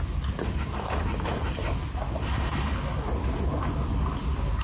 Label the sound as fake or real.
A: real